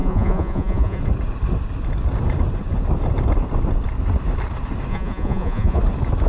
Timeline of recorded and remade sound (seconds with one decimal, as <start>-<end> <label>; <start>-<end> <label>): 0.0-1.0 remade; 1.0-4.9 recorded; 4.9-5.8 remade; 5.8-6.3 recorded